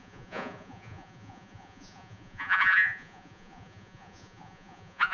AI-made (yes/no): yes